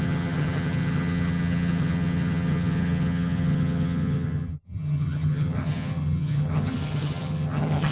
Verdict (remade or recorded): remade